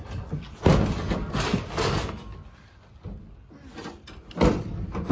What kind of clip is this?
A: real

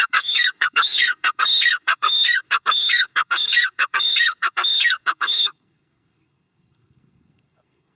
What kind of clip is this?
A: fake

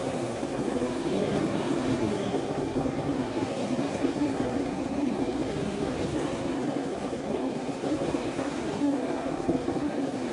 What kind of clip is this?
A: fake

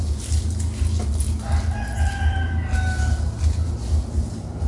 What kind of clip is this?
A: real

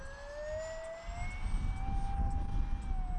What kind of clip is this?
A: real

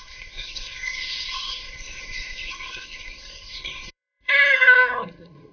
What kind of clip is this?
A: fake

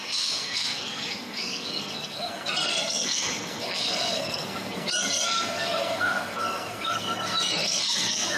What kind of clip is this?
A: fake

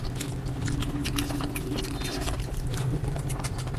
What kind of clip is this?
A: real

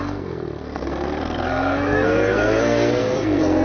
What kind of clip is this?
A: fake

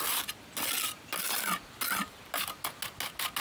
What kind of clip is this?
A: real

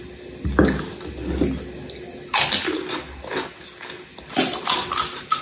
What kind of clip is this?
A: real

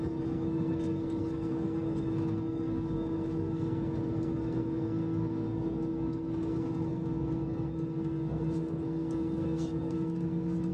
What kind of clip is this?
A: fake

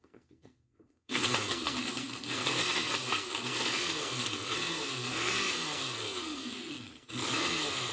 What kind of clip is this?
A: fake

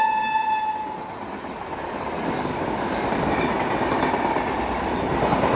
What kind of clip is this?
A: real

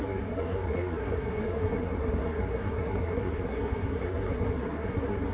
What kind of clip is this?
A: fake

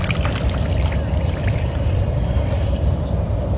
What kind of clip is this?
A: real